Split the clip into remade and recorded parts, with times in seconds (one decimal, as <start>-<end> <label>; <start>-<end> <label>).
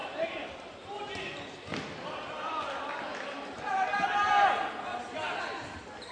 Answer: 0.0-3.7 remade; 3.7-4.9 recorded; 4.9-5.4 remade; 5.4-6.1 recorded